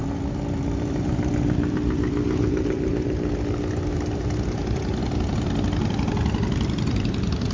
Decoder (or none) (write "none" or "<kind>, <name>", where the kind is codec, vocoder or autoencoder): none